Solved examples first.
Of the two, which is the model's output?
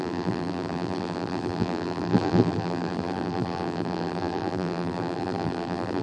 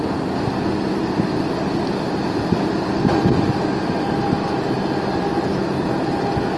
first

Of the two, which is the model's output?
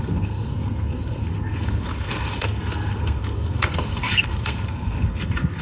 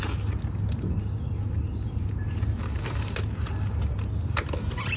first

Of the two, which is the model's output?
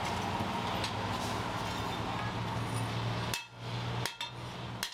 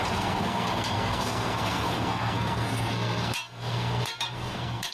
second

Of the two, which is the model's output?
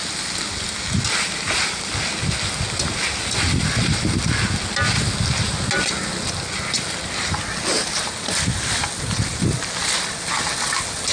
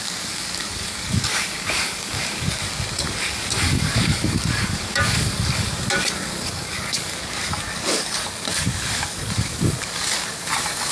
second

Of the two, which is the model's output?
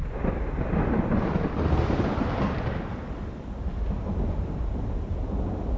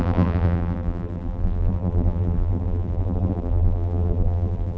second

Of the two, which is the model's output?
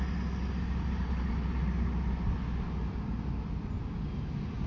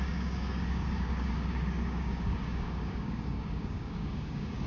second